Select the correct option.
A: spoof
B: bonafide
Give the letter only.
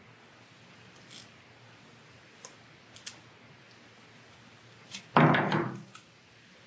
B